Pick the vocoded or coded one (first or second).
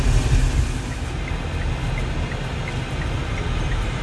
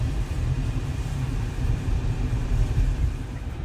second